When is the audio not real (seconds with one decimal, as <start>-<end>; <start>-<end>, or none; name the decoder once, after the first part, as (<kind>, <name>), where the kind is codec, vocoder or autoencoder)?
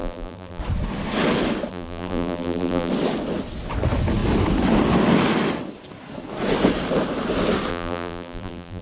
0.0-0.6 (vocoder, BigVGAN v2); 1.7-2.9; 7.7-8.8